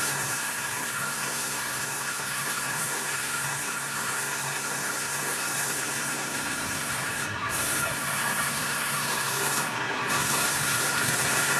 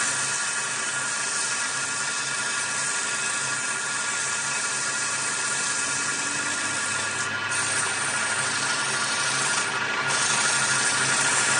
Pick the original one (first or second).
second